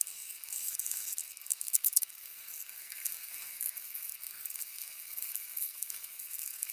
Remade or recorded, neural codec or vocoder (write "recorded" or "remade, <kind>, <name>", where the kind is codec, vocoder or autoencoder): remade, codec, SNAC